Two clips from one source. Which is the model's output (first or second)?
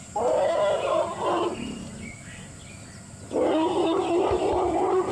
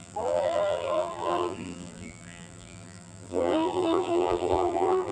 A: second